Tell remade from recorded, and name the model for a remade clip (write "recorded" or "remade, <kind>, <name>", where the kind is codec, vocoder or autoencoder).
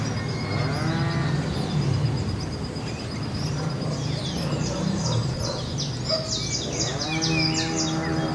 recorded